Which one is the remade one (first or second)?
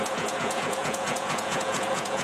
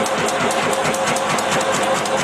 first